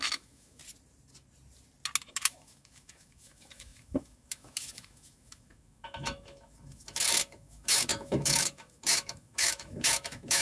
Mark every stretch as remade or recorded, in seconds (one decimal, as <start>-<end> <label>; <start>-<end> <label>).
0.0-0.6 remade; 0.6-2.1 recorded; 2.1-10.4 remade